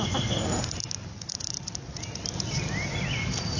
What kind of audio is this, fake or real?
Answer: real